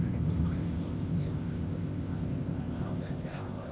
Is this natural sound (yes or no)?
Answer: no